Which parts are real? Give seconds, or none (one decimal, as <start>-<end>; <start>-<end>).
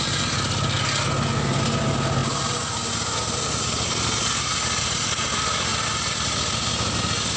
0.0-7.4